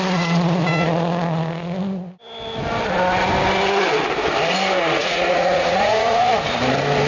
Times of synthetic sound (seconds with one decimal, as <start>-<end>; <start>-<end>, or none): 0.0-0.6; 4.8-6.2